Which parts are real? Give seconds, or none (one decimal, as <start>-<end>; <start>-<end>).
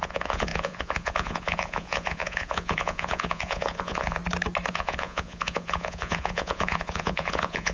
4.2-4.7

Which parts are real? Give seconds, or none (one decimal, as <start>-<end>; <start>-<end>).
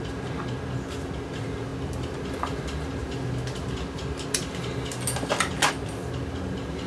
0.0-6.9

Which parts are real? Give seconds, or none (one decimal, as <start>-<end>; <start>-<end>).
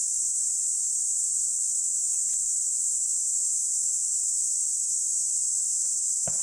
none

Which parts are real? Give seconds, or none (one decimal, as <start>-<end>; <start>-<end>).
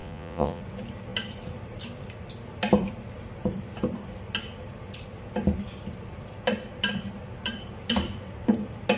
0.6-9.0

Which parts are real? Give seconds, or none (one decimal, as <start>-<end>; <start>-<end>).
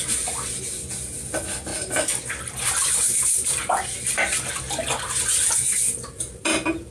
0.0-6.9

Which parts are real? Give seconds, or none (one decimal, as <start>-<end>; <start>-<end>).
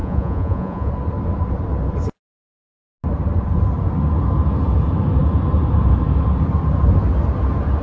0.9-7.8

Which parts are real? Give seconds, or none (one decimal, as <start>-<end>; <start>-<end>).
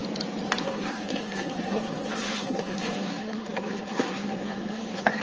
0.0-0.6